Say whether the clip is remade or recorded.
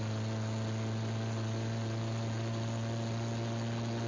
recorded